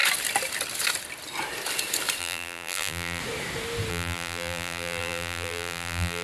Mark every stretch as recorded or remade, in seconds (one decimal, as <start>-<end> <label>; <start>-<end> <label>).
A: 0.0-2.2 recorded; 2.2-3.2 remade; 3.2-3.9 recorded; 3.9-6.2 remade